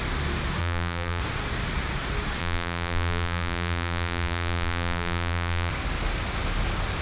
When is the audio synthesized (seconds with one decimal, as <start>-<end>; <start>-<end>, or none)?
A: 0.6-1.2; 2.4-5.7